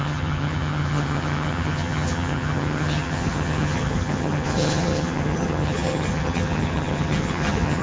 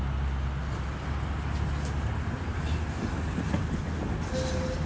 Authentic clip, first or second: second